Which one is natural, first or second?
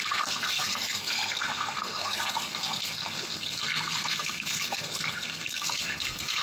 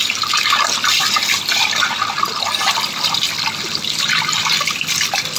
second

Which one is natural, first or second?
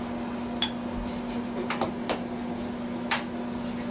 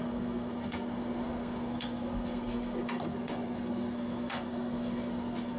first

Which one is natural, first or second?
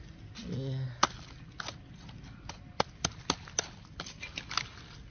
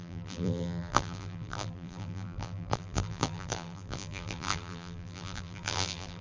first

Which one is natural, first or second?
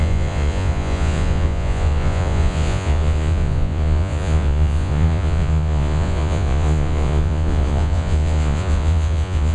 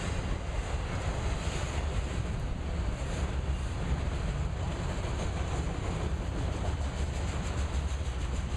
second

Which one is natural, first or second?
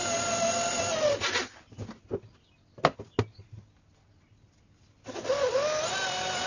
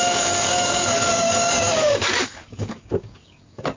first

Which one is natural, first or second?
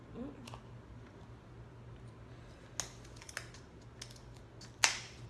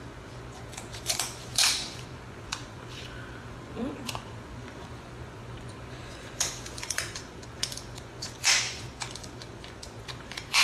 first